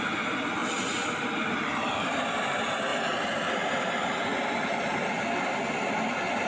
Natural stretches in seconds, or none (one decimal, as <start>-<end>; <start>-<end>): 0.0-0.6; 2.5-2.9; 3.7-4.3; 5.1-6.5